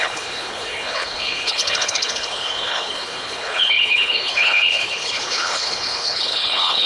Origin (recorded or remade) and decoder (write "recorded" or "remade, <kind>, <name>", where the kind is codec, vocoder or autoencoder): remade, codec, HILCodec